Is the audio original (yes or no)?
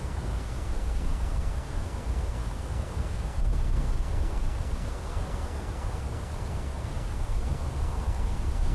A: no